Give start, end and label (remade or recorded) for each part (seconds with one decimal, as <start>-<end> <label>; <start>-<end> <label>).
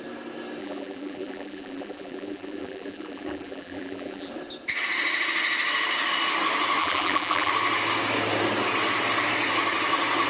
0.0-0.6 recorded; 0.6-4.3 remade; 4.3-6.8 recorded; 6.8-7.5 remade; 7.5-10.3 recorded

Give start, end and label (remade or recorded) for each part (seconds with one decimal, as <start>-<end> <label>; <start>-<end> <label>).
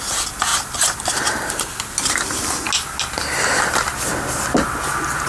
0.0-5.3 recorded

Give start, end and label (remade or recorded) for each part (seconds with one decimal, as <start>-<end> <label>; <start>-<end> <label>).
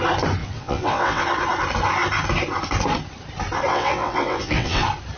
0.0-0.4 recorded; 0.4-1.2 remade; 1.2-3.7 recorded; 3.7-4.8 remade; 4.8-5.2 recorded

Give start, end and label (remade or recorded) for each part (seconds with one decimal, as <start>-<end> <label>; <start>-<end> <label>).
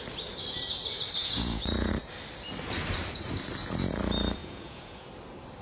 0.0-1.2 recorded; 1.2-1.9 remade; 1.9-4.4 recorded; 4.4-5.1 remade; 5.1-5.6 recorded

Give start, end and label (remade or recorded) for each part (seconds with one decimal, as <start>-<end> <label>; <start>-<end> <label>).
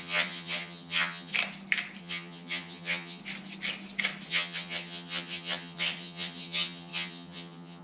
0.0-1.3 remade; 1.3-2.0 recorded; 2.0-3.2 remade; 3.2-4.3 recorded; 4.3-7.8 remade